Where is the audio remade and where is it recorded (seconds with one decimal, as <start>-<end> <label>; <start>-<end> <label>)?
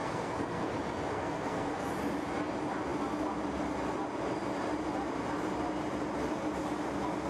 0.0-0.7 remade; 0.7-1.1 recorded; 1.1-1.9 remade; 1.9-7.3 recorded